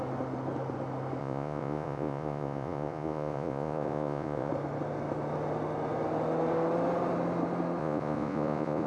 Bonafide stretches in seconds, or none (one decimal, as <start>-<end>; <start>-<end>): 0.0-1.2; 4.5-7.8